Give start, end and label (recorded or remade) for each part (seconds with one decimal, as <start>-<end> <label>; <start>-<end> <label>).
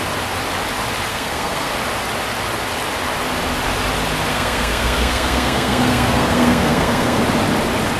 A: 0.0-1.1 recorded; 1.1-1.7 remade; 1.7-4.3 recorded; 4.3-7.2 remade; 7.2-8.0 recorded